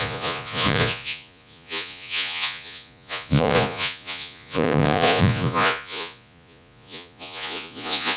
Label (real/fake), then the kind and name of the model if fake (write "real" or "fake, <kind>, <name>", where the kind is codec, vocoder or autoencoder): fake, vocoder, Vocos